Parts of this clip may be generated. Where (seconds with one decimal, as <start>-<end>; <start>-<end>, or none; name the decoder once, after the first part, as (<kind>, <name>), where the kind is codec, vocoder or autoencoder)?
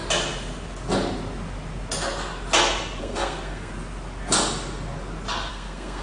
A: 3.0-3.7 (codec, SNAC); 5.5-6.0